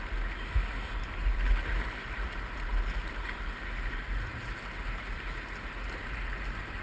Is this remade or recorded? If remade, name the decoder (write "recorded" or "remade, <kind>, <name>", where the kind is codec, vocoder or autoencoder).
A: recorded